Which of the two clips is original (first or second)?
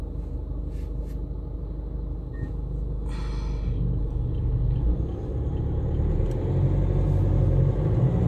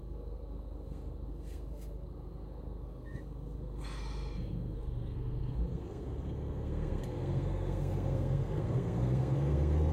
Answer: first